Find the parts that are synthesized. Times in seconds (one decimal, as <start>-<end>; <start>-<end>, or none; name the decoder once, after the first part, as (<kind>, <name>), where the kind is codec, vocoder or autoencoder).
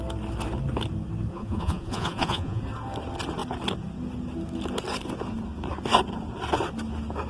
1.3-2.6 (vocoder, Vocos)